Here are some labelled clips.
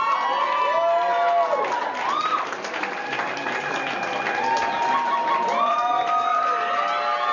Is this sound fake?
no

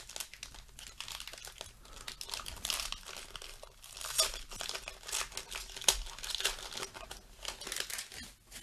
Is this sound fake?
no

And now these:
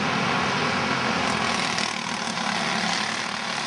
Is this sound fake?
no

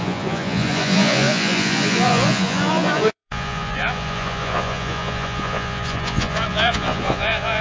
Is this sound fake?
yes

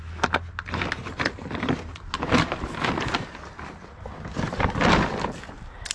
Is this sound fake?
no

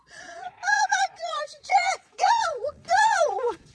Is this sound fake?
yes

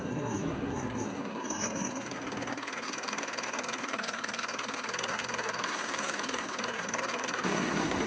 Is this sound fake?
yes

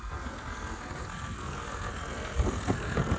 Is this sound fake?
yes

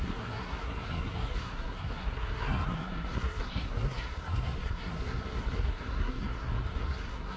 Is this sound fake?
yes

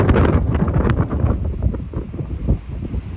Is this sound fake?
no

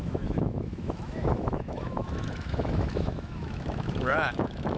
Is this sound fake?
yes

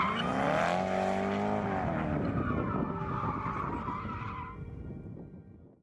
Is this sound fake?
no